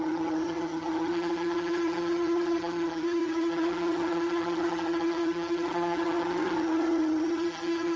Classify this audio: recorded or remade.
remade